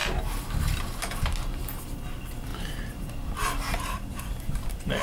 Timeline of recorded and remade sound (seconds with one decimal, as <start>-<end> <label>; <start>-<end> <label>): 0.0-1.4 recorded; 1.4-2.5 remade; 2.5-4.4 recorded; 4.4-5.0 remade